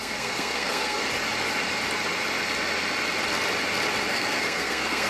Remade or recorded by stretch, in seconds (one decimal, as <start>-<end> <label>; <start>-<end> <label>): 0.0-1.0 remade; 1.0-4.1 recorded; 4.1-5.1 remade